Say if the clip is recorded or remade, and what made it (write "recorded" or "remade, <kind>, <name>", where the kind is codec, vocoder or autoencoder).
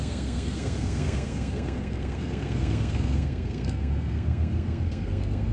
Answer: remade, codec, SNAC